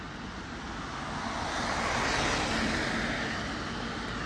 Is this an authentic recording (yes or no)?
yes